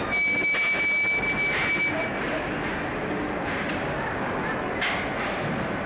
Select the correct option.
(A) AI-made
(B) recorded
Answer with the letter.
B